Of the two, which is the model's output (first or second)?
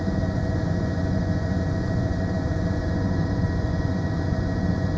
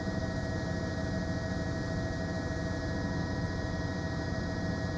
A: first